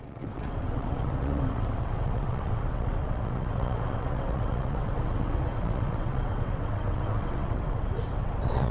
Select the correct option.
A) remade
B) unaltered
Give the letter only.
A